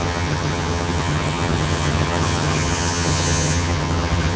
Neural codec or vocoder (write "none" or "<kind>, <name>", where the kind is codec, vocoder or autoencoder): vocoder, HiFi-GAN